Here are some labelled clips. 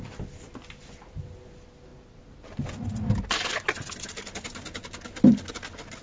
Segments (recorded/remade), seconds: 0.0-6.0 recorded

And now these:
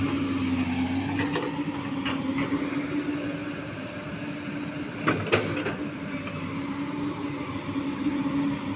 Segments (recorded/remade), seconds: 0.0-8.8 recorded

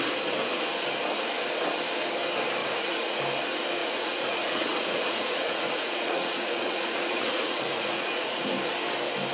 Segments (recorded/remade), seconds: 0.0-2.6 recorded; 2.6-3.2 remade; 3.2-3.8 recorded; 3.8-8.5 remade; 8.5-9.3 recorded

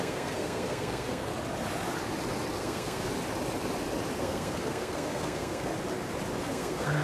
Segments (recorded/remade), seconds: 0.0-1.3 remade; 1.3-2.6 recorded; 2.6-3.1 remade; 3.1-4.2 recorded; 4.2-5.7 remade; 5.7-6.4 recorded; 6.4-7.0 remade

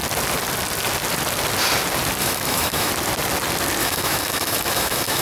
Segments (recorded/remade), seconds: 0.0-2.2 recorded; 2.2-2.9 remade; 2.9-3.8 recorded; 3.8-5.2 remade